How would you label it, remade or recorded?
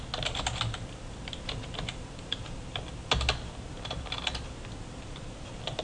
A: recorded